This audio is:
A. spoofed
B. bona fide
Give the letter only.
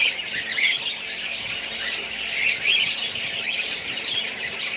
A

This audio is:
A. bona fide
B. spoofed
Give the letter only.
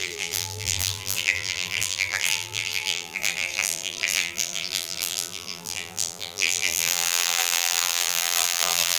B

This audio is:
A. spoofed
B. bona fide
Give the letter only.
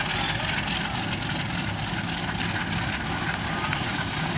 B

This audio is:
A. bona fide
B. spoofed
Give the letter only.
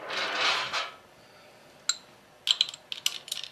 A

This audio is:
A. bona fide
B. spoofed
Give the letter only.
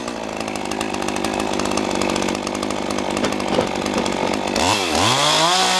A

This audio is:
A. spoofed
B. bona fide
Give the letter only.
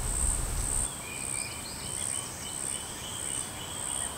B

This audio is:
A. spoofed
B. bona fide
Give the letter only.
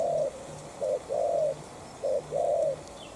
B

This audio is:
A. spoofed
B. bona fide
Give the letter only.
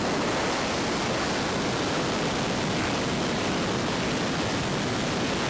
B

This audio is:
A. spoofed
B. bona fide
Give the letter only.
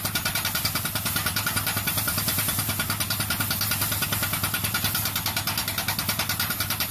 B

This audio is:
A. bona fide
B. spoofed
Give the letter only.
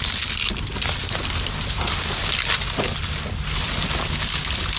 A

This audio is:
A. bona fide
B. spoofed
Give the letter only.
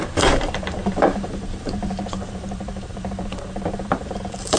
B